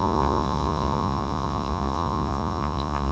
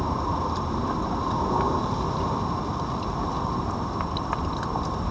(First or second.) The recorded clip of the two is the second